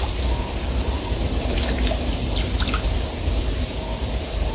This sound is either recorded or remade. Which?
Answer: recorded